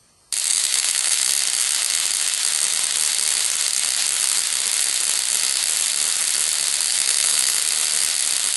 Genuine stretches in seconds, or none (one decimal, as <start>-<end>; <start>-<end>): 0.0-0.5; 1.3-6.9; 7.6-8.6